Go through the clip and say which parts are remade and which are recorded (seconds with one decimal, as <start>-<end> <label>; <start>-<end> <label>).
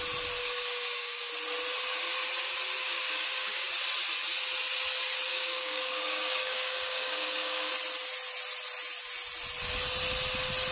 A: 0.0-0.4 recorded; 0.4-1.3 remade; 1.3-2.8 recorded; 2.8-3.7 remade; 3.7-5.3 recorded; 5.3-7.7 remade; 7.7-10.7 recorded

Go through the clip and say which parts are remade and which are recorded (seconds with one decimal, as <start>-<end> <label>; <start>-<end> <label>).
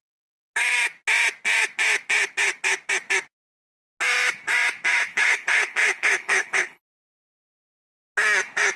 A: 0.0-5.1 recorded; 5.1-6.8 remade; 6.8-8.8 recorded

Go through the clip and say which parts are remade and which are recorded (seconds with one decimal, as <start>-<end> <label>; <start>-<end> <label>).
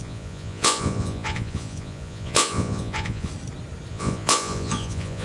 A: 0.0-3.3 remade; 3.3-3.9 recorded; 3.9-5.2 remade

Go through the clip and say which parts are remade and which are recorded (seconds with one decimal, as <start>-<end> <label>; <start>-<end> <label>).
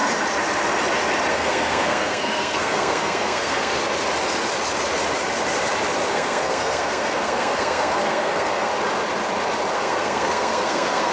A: 0.0-1.3 recorded; 1.3-3.7 remade; 3.7-6.1 recorded; 6.1-8.7 remade; 8.7-9.7 recorded; 9.7-11.1 remade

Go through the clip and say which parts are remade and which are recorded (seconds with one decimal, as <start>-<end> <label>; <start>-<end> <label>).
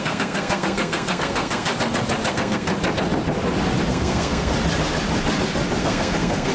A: 0.0-1.7 remade; 1.7-2.3 recorded; 2.3-2.7 remade; 2.7-3.9 recorded; 3.9-4.5 remade; 4.5-5.8 recorded; 5.8-6.5 remade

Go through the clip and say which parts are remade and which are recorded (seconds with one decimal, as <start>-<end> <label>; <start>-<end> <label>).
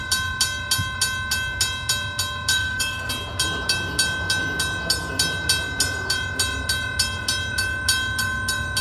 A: 0.0-2.5 recorded; 2.5-3.1 remade; 3.1-8.8 recorded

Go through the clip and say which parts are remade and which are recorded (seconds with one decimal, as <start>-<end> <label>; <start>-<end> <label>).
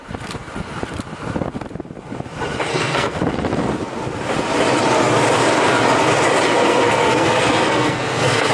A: 0.0-2.7 recorded; 2.7-3.2 remade; 3.2-6.6 recorded; 6.6-8.5 remade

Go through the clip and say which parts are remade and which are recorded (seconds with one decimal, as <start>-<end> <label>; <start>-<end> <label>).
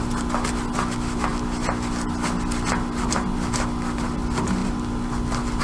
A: 0.0-5.6 recorded